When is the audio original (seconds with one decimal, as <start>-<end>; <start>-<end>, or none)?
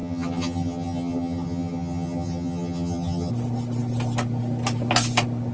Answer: 3.3-5.5